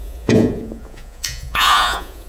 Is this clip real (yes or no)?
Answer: no